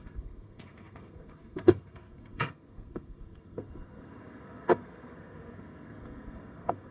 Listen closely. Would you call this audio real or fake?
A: fake